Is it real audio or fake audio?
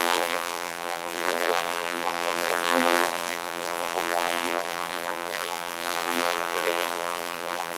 fake